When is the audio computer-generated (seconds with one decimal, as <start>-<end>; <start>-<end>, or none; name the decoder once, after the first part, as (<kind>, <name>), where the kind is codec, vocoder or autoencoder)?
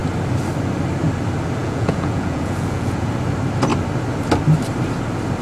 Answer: 1.6-3.1 (vocoder, Vocos)